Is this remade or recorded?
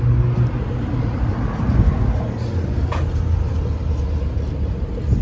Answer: recorded